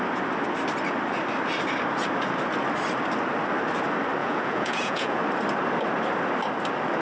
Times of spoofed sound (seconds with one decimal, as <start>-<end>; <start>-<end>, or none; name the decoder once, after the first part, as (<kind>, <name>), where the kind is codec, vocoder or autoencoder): 4.2-5.2 (vocoder, Vocos)